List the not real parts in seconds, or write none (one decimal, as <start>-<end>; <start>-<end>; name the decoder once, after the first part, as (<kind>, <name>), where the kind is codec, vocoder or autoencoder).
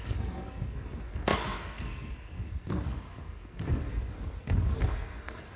0.0-5.6 (codec, SNAC)